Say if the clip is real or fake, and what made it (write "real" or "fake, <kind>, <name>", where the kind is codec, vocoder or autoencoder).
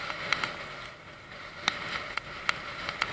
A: real